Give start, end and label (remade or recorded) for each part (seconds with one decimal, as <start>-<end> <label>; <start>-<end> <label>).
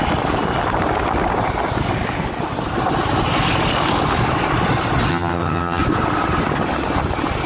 0.0-5.1 recorded; 5.1-5.8 remade; 5.8-7.5 recorded